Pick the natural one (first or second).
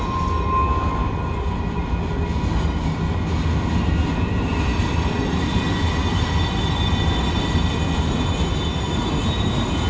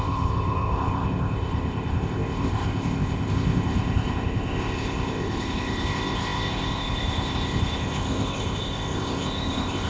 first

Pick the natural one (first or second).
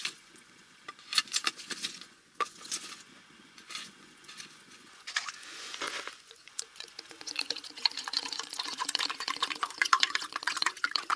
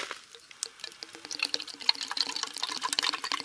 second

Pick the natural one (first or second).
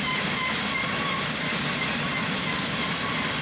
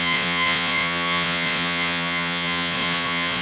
first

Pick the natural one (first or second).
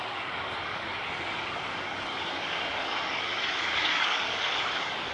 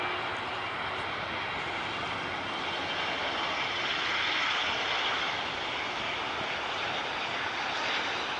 second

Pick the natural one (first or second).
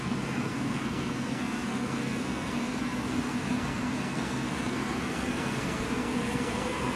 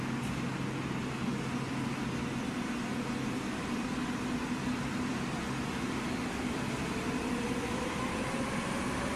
second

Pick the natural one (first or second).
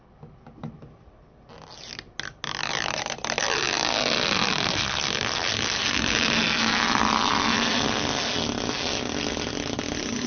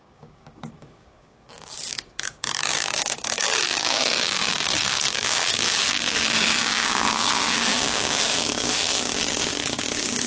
first